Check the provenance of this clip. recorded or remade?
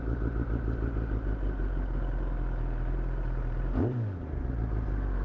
recorded